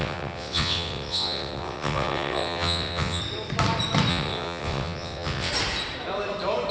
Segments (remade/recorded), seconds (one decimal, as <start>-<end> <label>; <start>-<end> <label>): 0.0-3.2 remade; 3.2-4.1 recorded; 4.1-5.5 remade; 5.5-6.7 recorded